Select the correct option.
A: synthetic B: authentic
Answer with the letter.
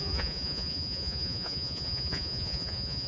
A